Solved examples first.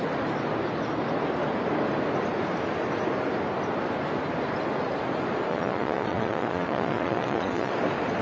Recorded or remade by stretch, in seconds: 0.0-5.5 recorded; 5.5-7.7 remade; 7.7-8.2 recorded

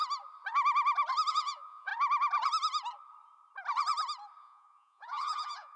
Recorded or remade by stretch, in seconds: 0.0-1.3 recorded; 1.3-1.9 remade; 1.9-4.4 recorded; 4.4-5.8 remade

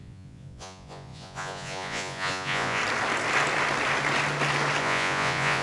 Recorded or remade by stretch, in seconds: 0.0-2.8 remade; 2.8-4.8 recorded; 4.8-5.6 remade

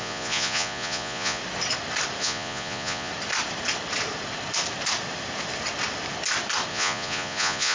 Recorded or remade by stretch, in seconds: 0.0-1.4 remade; 1.4-2.2 recorded; 2.2-3.1 remade; 3.1-6.7 recorded; 6.7-7.7 remade

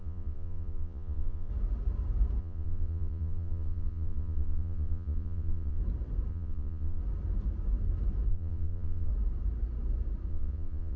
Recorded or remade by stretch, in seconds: 0.0-1.5 remade; 1.5-2.4 recorded; 2.4-5.8 remade; 5.8-6.3 recorded; 6.3-7.0 remade; 7.0-8.3 recorded; 8.3-9.1 remade; 9.1-10.3 recorded; 10.3-11.0 remade

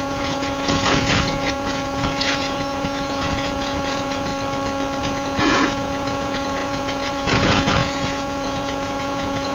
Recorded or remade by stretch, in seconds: 0.0-4.3 remade; 4.3-5.0 recorded; 5.0-9.5 remade

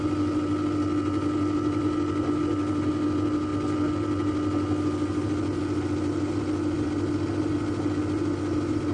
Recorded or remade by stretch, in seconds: 0.0-8.9 recorded

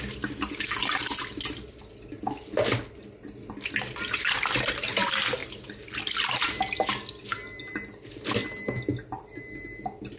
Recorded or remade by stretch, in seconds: 0.0-10.2 recorded